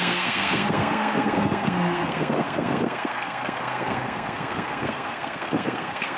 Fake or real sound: fake